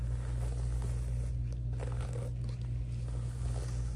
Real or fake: real